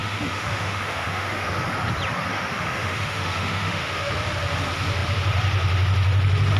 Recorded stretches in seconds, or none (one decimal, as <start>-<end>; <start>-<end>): 1.5-2.3; 4.1-6.6